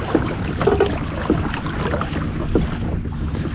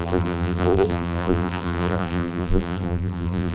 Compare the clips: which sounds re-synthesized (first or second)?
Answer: second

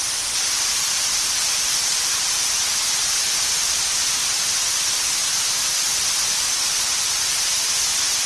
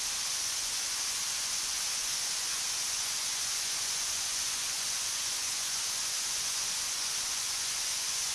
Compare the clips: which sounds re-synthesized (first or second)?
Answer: second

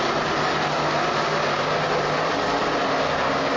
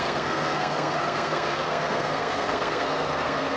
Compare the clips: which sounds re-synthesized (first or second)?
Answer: second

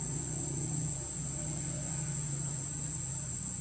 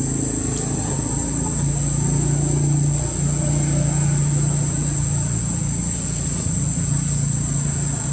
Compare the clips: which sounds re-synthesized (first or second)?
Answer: first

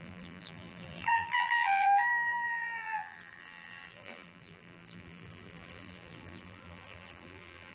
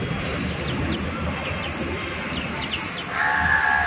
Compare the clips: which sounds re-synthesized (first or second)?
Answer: first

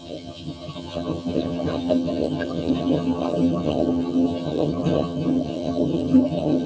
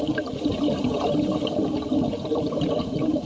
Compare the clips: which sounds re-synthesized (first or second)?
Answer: first